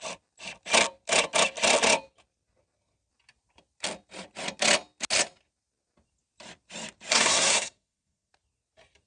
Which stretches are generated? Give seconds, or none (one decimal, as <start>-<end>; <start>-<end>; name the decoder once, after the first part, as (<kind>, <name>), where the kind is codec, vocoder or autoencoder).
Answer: 7.1-8.3 (codec, SNAC)